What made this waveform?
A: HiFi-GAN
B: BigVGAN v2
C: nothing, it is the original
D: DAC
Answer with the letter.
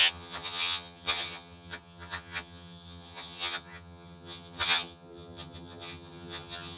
A